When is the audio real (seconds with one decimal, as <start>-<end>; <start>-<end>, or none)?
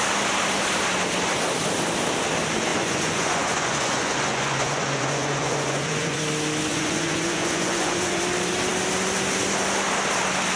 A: 0.0-2.7; 6.2-6.7; 8.2-10.6